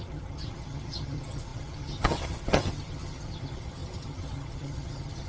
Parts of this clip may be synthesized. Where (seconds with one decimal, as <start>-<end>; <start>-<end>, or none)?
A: 0.0-5.3